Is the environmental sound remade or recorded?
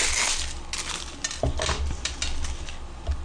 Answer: recorded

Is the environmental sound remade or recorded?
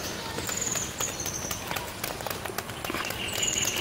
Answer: recorded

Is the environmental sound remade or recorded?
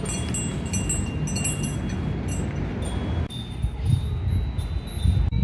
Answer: recorded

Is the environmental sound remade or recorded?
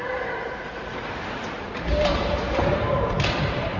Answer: remade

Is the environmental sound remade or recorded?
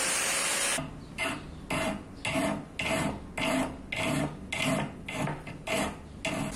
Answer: recorded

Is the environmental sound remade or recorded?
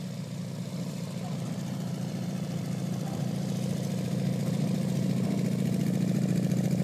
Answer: remade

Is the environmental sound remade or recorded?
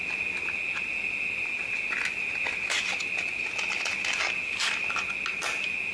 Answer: recorded